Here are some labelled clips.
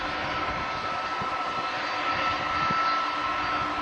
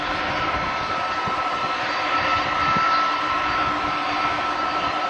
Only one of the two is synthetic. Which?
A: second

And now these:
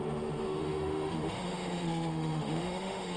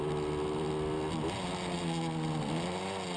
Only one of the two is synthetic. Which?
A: first